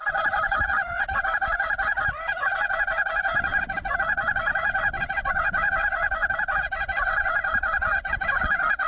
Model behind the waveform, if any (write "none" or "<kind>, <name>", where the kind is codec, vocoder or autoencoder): vocoder, WaveNeXt